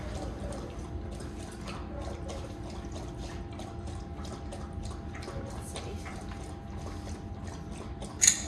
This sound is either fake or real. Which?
real